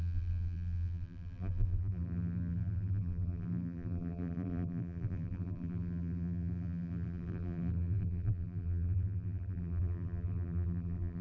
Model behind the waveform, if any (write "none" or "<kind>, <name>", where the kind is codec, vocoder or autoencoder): vocoder, BigVGAN v2